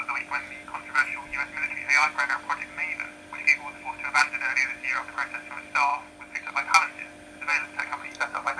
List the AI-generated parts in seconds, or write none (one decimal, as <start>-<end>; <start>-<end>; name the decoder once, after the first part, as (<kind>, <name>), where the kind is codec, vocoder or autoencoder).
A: none